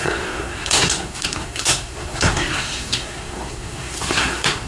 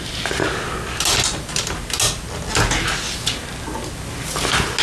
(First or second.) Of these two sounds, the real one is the second